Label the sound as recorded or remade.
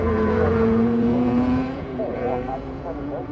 remade